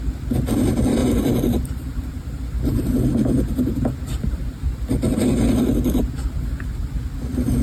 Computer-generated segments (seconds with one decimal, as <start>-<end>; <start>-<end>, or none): 1.0-2.6